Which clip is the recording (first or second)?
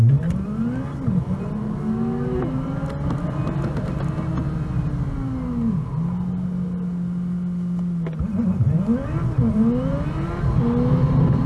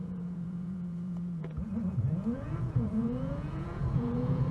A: first